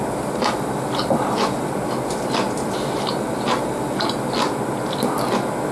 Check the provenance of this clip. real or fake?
real